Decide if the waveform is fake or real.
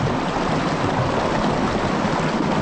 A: real